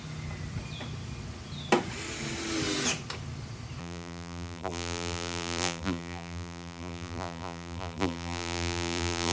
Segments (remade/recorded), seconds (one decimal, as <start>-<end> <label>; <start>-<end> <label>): 0.0-3.8 recorded; 3.8-9.3 remade